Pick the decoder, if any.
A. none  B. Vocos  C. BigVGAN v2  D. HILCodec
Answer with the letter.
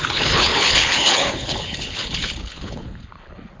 D